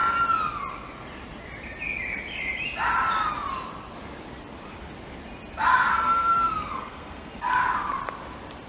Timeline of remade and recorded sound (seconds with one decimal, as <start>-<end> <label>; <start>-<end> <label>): 0.0-5.9 recorded; 5.9-7.5 remade; 7.5-8.7 recorded

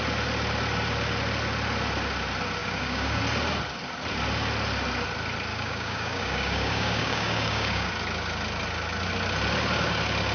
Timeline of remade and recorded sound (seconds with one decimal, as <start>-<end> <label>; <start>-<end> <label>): 0.0-2.6 recorded; 2.6-3.2 remade; 3.2-5.5 recorded; 5.5-7.9 remade; 7.9-10.3 recorded

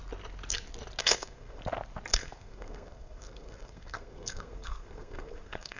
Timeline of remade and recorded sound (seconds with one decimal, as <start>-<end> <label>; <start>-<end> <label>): 0.0-1.0 recorded; 1.0-1.6 remade; 1.6-2.1 recorded; 2.1-5.8 remade

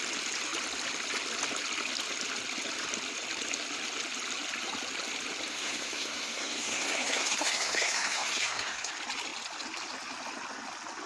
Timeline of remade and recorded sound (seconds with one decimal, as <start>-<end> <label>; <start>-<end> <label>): 0.0-5.5 recorded; 5.5-8.9 remade; 8.9-11.1 recorded

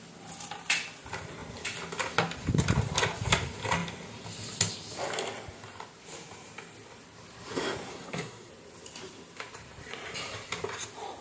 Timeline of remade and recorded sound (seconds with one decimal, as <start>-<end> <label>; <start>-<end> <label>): 0.0-7.9 recorded; 7.9-8.5 remade; 8.5-11.2 recorded

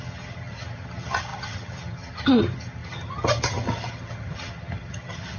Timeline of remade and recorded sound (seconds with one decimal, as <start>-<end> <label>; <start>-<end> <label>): 0.0-5.4 remade